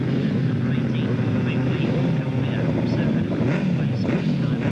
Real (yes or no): yes